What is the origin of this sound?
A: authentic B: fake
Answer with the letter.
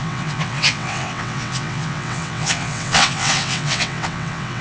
B